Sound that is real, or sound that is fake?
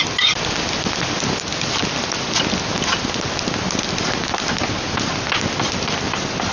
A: real